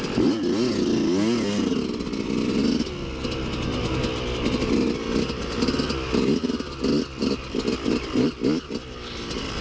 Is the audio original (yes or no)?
yes